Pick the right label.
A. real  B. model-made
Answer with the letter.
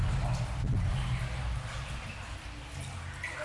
A